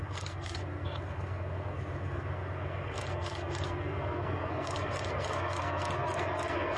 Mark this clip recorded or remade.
remade